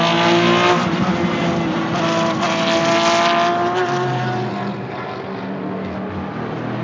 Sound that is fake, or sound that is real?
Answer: real